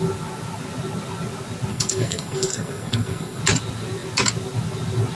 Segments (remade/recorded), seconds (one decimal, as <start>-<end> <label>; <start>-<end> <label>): 0.0-1.7 recorded; 1.7-3.4 remade; 3.4-5.1 recorded